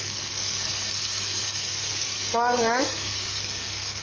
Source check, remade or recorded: remade